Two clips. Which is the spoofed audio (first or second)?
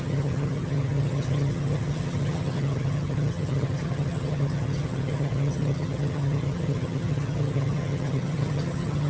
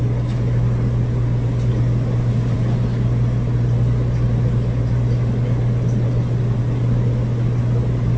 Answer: first